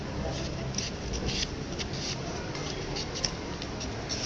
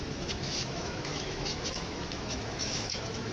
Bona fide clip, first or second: first